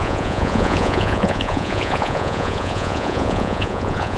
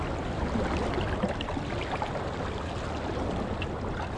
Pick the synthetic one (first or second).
first